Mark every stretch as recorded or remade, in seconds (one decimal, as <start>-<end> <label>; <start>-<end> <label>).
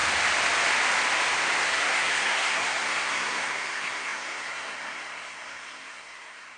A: 0.0-1.7 recorded; 1.7-6.6 remade